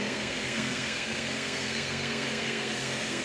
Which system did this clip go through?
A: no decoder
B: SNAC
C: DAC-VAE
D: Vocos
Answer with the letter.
B